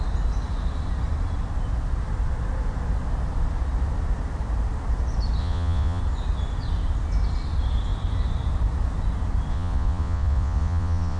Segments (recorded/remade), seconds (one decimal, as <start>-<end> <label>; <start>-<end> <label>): 0.0-5.4 recorded; 5.4-6.0 remade; 6.0-9.5 recorded; 9.5-11.2 remade